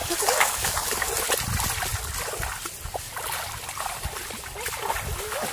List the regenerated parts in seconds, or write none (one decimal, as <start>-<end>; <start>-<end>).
0.0-1.1